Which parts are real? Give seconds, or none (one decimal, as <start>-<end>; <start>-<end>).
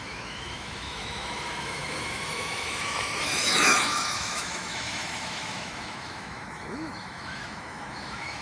none